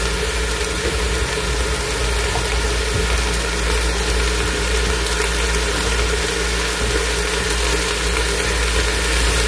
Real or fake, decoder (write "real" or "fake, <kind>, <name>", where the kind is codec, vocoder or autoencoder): real